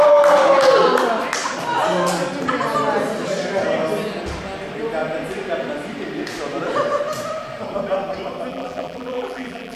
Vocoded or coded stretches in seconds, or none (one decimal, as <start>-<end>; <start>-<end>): 8.5-9.8